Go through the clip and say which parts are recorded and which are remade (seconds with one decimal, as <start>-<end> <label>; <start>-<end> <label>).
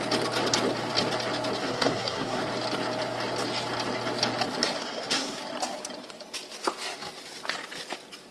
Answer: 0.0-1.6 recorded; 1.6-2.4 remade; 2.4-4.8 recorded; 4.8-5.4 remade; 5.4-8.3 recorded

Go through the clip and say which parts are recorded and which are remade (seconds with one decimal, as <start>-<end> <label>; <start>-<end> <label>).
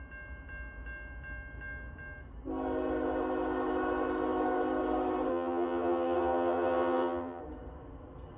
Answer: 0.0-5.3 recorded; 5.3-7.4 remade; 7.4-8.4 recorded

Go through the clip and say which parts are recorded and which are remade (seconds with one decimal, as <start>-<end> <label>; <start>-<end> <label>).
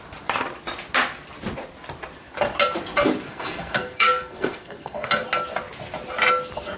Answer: 0.0-3.3 recorded; 3.3-5.1 remade; 5.1-6.8 recorded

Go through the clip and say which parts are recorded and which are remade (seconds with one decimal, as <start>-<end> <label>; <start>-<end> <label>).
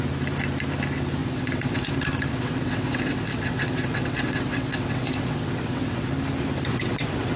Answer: 0.0-1.2 recorded; 1.2-1.9 remade; 1.9-2.3 recorded; 2.3-6.1 remade; 6.1-6.7 recorded; 6.7-7.4 remade